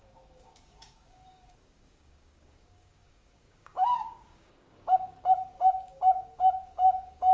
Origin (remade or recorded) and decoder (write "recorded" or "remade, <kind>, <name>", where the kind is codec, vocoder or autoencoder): remade, codec, DAC